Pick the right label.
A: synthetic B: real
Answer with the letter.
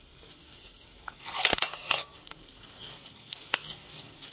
A